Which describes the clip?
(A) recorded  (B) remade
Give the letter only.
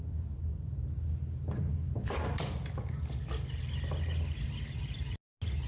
A